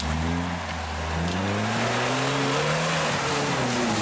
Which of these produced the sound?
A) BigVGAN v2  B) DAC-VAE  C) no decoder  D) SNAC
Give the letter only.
C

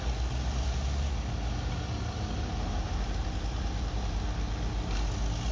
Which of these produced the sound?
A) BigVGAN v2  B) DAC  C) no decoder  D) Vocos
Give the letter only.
C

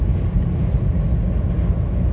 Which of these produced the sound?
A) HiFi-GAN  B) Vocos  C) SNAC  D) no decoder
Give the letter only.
D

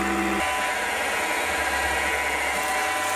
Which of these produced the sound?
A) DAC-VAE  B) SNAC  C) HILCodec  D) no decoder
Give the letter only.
D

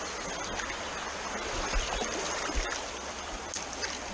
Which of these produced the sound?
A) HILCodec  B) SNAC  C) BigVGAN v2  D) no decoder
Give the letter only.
D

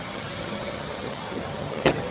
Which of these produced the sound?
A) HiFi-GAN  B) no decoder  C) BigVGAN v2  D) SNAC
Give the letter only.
A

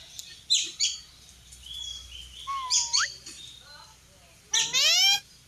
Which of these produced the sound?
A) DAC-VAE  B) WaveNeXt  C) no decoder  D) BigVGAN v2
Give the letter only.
C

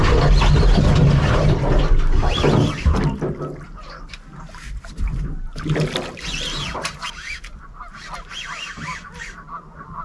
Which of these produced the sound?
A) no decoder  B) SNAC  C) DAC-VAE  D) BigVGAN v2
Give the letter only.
A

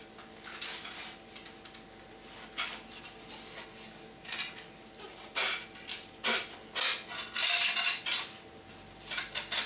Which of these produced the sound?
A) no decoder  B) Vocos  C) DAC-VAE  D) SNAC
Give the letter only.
A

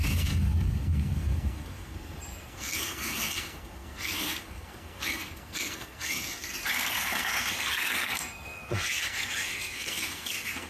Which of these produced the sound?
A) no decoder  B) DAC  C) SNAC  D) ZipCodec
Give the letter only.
C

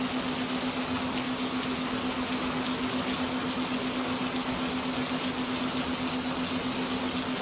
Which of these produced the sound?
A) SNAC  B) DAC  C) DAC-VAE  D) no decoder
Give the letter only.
D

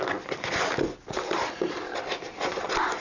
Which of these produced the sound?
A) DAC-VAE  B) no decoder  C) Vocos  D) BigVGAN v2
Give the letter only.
B